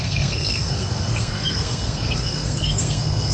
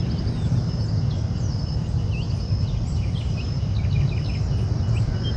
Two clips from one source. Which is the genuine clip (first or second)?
second